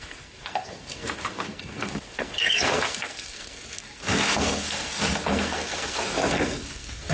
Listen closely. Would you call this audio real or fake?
fake